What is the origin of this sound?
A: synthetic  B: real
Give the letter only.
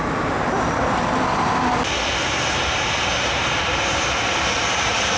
B